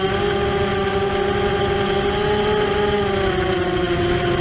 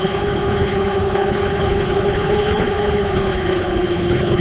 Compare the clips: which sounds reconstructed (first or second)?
second